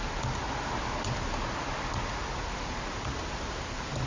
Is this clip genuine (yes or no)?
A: yes